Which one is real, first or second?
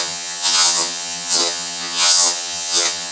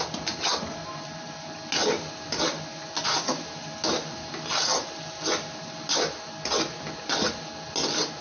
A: second